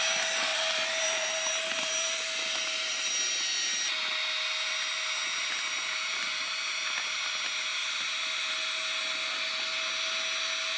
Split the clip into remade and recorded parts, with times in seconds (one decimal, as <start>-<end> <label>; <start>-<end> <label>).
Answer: 0.0-0.5 recorded; 0.5-3.1 remade; 3.1-5.3 recorded; 5.3-6.4 remade; 6.4-7.8 recorded; 7.8-8.5 remade; 8.5-10.8 recorded